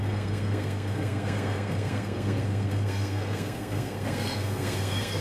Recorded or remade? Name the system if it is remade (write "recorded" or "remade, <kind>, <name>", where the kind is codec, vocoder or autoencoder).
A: remade, codec, SNAC